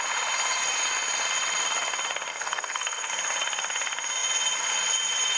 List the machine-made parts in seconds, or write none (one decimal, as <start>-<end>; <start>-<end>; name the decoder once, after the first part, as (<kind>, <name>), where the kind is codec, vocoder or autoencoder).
2.3-3.1 (codec, SNAC)